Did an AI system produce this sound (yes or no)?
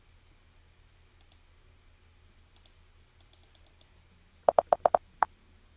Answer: no